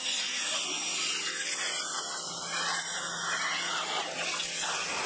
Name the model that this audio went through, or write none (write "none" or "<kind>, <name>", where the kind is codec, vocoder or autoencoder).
none